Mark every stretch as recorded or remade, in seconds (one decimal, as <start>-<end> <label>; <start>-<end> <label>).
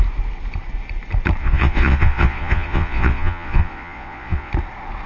0.0-1.4 recorded; 1.4-4.5 remade; 4.5-5.1 recorded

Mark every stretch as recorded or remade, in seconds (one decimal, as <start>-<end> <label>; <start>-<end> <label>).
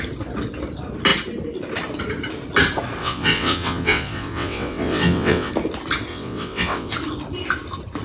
0.0-3.0 recorded; 3.0-5.5 remade; 5.5-6.1 recorded; 6.1-6.9 remade; 6.9-8.0 recorded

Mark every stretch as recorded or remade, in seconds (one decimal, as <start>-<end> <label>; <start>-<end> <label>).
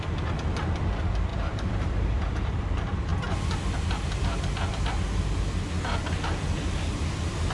0.0-1.3 recorded; 1.3-2.6 remade; 2.6-7.5 recorded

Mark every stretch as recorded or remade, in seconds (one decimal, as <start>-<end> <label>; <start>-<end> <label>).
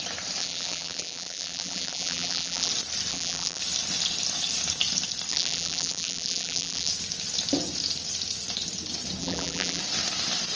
0.0-0.4 recorded; 0.4-2.7 remade; 2.7-3.1 recorded; 3.1-3.6 remade; 3.6-5.3 recorded; 5.3-6.9 remade; 6.9-9.2 recorded; 9.2-9.8 remade; 9.8-10.6 recorded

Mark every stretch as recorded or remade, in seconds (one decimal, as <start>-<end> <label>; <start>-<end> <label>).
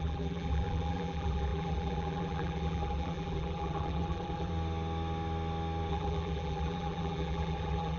0.0-4.5 remade; 4.5-5.9 recorded; 5.9-8.0 remade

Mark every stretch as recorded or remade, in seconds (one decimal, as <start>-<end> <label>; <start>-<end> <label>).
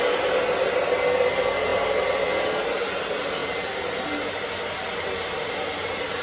0.0-3.4 recorded; 3.4-5.5 remade; 5.5-6.2 recorded